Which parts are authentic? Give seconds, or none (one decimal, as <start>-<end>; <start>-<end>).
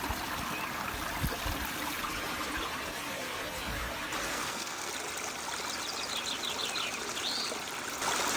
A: 0.0-4.3; 4.9-8.4